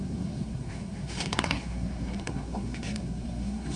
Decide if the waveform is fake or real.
fake